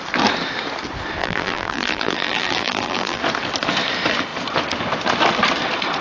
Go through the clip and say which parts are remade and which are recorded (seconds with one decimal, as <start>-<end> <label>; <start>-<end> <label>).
0.0-1.2 recorded; 1.2-3.2 remade; 3.2-6.0 recorded